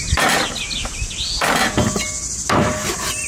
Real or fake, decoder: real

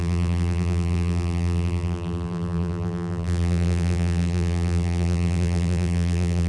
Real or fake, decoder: fake, vocoder, BigVGAN v2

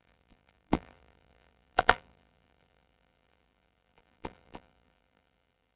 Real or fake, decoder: fake, vocoder, BigVGAN v2